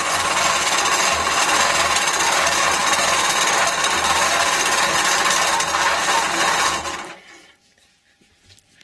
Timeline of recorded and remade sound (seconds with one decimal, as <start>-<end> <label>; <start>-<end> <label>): 0.0-1.0 remade; 1.0-2.8 recorded; 2.8-3.4 remade; 3.4-8.8 recorded